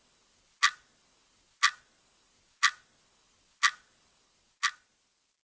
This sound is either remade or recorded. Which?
recorded